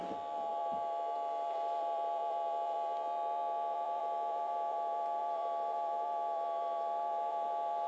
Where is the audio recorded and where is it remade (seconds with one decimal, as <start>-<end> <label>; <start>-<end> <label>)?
0.0-7.9 remade